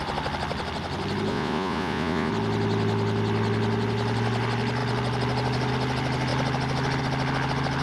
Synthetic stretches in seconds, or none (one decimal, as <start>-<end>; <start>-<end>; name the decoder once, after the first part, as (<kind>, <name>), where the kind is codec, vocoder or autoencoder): 1.3-2.3 (vocoder, Vocos)